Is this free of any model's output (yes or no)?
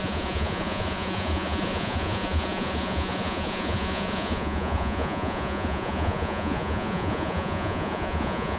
no